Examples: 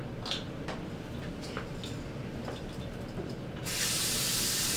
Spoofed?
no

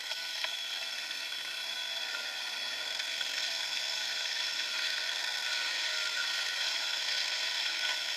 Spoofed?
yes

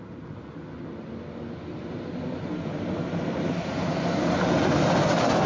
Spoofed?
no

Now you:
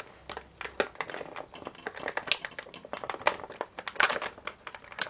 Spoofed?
no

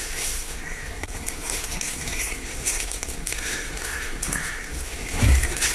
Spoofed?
yes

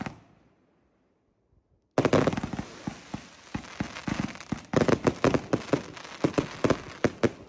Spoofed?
no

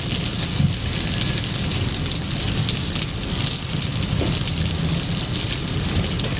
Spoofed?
no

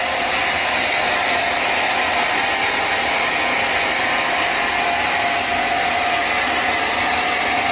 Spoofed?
no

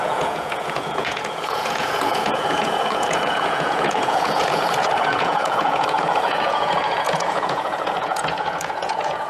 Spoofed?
yes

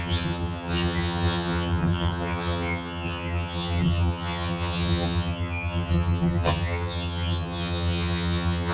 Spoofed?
yes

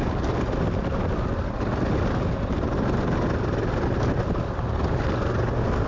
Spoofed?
no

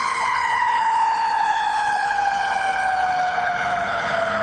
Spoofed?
yes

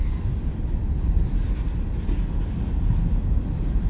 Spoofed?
no